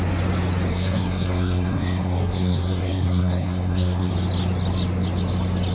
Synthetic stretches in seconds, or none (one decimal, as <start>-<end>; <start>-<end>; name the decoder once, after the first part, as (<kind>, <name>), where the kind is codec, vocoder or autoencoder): 0.7-4.1 (codec, SNAC)